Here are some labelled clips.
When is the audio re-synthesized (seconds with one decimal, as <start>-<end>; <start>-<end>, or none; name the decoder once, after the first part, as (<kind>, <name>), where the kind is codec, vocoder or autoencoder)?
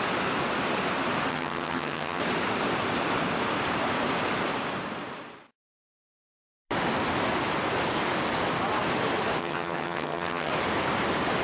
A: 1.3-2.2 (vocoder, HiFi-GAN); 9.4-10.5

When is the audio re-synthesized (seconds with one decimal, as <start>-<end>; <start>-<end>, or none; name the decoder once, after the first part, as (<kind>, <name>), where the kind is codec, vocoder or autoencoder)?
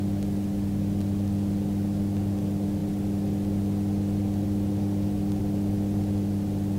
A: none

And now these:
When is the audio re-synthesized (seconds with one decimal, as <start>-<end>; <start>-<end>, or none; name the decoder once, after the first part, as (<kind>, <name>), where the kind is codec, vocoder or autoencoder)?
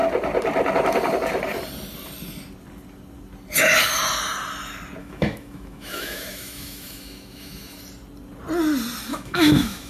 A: 5.0-7.8 (autoencoder, DAC-VAE); 9.1-9.9